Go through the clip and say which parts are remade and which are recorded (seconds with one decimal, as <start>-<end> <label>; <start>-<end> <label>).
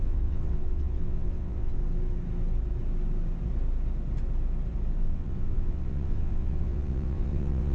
0.0-1.8 remade; 1.8-5.0 recorded; 5.0-7.7 remade